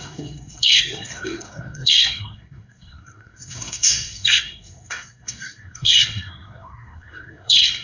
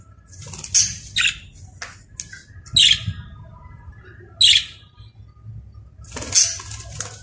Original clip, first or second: second